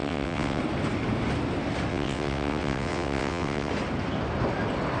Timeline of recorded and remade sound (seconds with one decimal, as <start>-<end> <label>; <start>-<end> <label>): 0.0-0.6 remade; 0.6-1.9 recorded; 1.9-3.7 remade; 3.7-5.0 recorded